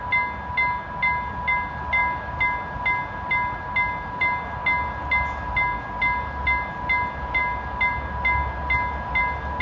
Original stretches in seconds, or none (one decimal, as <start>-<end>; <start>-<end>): 0.0-9.6